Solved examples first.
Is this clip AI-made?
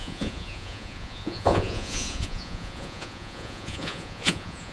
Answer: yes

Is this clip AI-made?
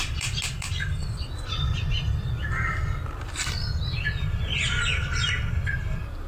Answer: no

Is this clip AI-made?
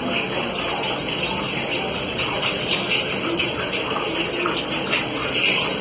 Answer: no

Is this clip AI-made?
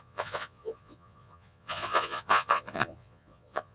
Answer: yes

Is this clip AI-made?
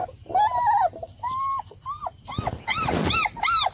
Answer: no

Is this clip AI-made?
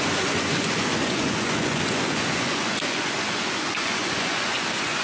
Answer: yes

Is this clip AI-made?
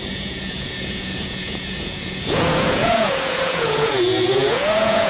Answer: yes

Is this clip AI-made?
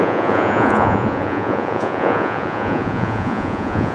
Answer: yes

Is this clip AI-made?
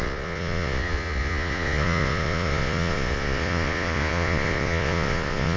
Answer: yes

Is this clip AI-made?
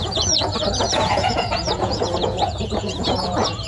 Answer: yes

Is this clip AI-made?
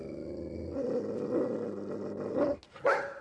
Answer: no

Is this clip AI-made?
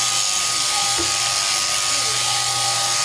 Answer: no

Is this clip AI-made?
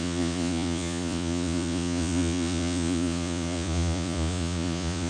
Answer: yes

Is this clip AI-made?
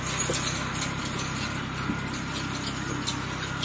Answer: no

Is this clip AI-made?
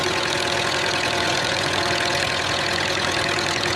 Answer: yes